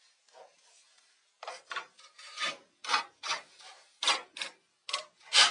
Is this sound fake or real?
fake